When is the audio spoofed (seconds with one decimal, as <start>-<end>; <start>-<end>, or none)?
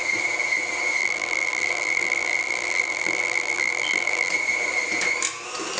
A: 1.0-4.3